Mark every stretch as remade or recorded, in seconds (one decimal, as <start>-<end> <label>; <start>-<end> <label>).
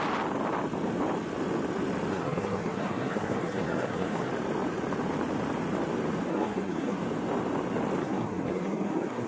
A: 0.0-2.1 recorded; 2.1-4.3 remade; 4.3-6.3 recorded; 6.3-7.0 remade; 7.0-8.0 recorded; 8.0-9.3 remade